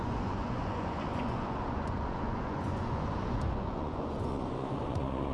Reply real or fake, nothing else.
fake